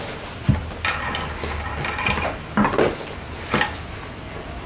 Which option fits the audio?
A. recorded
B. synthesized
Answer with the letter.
A